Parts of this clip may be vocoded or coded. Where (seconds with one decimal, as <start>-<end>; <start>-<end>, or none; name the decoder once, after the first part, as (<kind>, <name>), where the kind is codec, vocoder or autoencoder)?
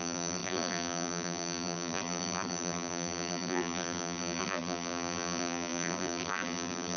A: 0.0-7.0 (vocoder, BigVGAN v2)